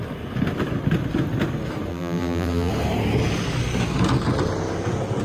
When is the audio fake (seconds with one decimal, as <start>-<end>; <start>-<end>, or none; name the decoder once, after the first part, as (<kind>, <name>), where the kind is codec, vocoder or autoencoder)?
1.9-2.7 (vocoder, BigVGAN v2)